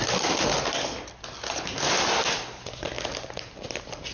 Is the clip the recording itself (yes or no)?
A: yes